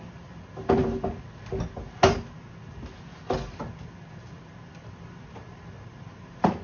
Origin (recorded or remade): recorded